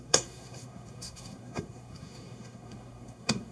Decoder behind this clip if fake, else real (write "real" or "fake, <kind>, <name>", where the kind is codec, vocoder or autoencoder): fake, codec, SNAC